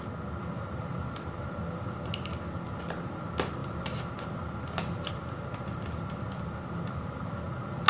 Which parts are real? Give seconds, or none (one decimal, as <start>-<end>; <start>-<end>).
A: 0.0-7.9